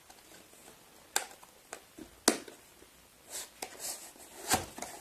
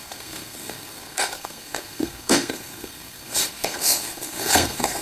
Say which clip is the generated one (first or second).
second